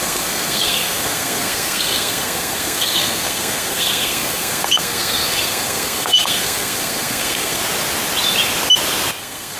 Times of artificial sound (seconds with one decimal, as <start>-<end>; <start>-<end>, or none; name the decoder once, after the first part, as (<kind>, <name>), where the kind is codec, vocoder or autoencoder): 0.0-7.6 (codec, SNAC); 9.2-9.6